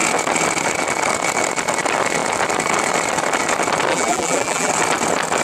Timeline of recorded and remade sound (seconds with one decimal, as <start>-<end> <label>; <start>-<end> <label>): 0.0-3.9 recorded; 3.9-4.7 remade; 4.7-5.4 recorded